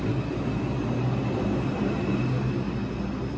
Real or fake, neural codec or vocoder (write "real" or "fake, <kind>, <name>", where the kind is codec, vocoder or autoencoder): real